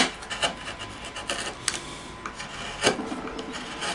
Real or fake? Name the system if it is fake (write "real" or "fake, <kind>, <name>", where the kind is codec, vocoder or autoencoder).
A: real